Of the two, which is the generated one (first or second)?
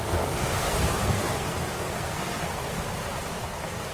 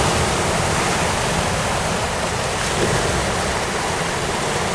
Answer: first